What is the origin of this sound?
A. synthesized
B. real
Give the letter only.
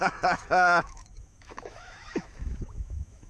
A